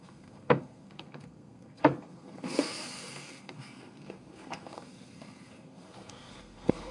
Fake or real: fake